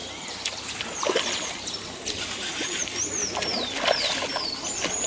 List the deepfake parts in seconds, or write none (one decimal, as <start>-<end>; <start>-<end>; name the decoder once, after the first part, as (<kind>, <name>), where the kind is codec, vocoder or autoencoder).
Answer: 0.0-2.9 (vocoder, BigVGAN v2); 3.5-4.2